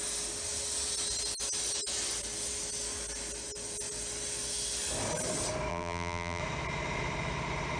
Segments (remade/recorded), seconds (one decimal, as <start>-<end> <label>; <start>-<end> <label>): 0.0-5.7 recorded; 5.7-6.4 remade; 6.4-7.8 recorded